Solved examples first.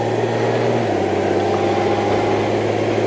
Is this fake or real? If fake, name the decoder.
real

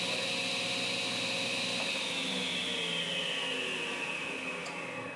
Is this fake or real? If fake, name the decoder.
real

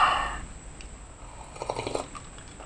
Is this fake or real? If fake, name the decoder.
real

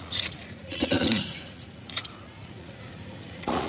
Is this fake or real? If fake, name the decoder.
fake, vocoder, Vocos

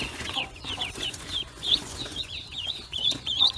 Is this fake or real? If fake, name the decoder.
fake, vocoder, Vocos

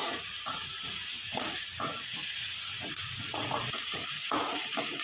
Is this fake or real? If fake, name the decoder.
fake, vocoder, Vocos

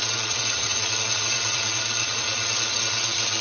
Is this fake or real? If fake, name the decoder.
fake, vocoder, Vocos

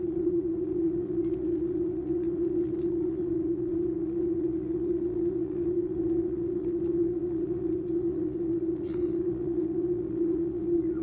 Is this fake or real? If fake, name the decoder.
fake, vocoder, Vocos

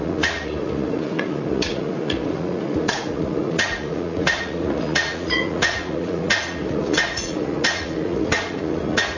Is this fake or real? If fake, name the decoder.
fake, vocoder, Vocos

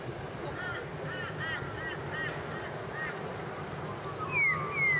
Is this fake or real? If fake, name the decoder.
real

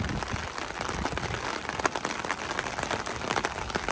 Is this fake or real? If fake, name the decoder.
real